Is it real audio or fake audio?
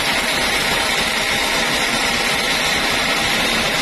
real